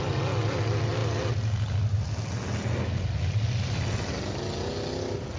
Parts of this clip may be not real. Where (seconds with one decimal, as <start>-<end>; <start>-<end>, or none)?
none